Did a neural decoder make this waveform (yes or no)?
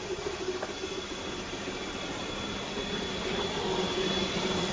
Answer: no